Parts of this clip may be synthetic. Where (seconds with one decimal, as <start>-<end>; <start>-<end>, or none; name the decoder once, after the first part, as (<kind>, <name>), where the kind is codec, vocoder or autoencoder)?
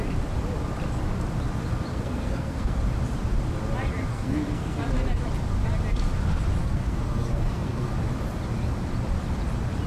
1.9-2.8 (codec, SNAC); 4.1-4.8; 6.6-7.9